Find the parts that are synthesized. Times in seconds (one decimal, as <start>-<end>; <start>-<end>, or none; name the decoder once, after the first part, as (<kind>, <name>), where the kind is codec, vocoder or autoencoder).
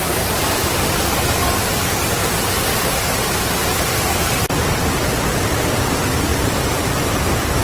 6.3-7.6 (vocoder, BigVGAN v2)